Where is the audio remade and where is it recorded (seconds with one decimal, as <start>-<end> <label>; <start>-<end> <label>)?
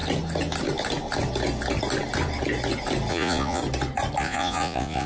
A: 0.0-3.1 recorded; 3.1-3.6 remade; 3.6-4.2 recorded; 4.2-5.1 remade